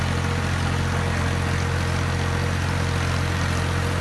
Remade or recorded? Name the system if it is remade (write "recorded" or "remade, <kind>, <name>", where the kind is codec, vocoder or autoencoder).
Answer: recorded